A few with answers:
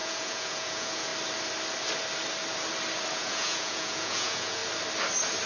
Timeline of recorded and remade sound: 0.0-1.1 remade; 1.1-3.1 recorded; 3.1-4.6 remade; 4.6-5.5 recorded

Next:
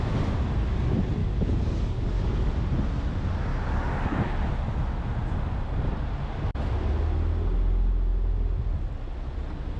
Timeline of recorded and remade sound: 0.0-1.2 recorded; 1.2-2.5 remade; 2.5-3.5 recorded; 3.5-4.4 remade; 4.4-9.8 recorded

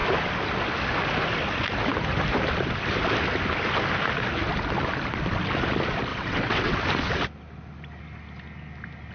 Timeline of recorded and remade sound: 0.0-6.1 recorded; 6.1-6.8 remade; 6.8-9.1 recorded

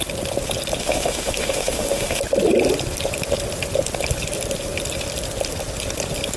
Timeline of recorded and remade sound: 0.0-0.8 recorded; 0.8-2.2 remade; 2.2-6.4 recorded

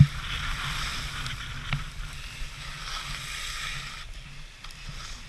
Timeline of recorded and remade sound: 0.0-5.3 recorded